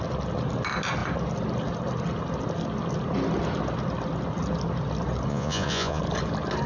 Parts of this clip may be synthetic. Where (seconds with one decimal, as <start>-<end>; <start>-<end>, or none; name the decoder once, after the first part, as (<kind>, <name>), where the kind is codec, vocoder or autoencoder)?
5.3-6.0 (vocoder, Vocos)